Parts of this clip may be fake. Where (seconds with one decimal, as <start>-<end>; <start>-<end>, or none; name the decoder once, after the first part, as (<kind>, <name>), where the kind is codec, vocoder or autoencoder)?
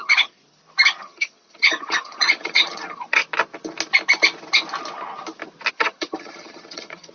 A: 0.0-0.4 (vocoder, HiFi-GAN); 1.0-3.2; 5.7-7.1